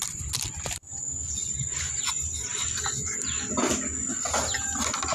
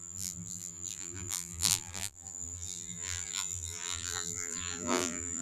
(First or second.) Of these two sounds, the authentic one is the first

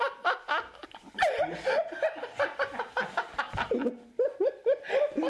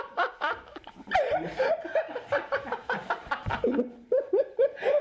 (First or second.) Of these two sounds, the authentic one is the first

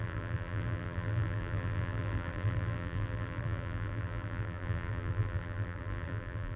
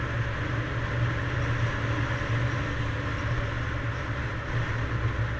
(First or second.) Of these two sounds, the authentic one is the second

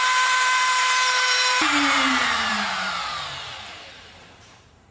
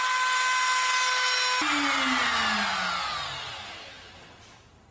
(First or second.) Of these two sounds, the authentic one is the second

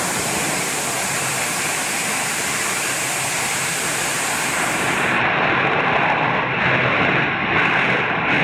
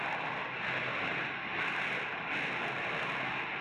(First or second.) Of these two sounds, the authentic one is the second